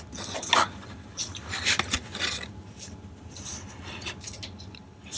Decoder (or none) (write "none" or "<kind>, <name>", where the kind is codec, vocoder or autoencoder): none